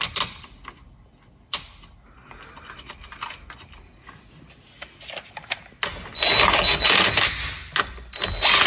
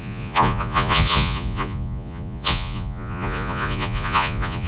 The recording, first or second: first